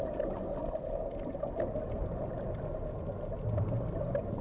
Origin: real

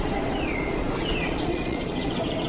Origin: fake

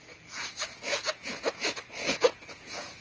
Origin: fake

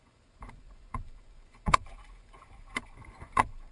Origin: fake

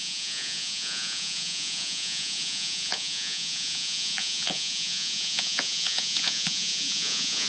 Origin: fake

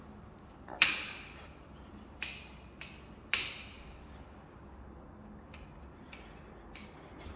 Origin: real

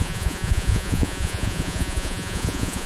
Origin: fake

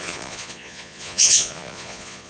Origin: fake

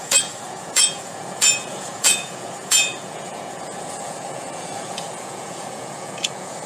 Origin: fake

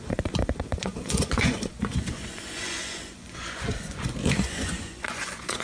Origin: fake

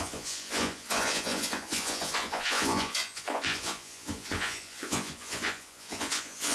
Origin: fake